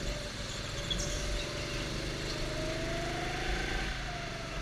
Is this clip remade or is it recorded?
recorded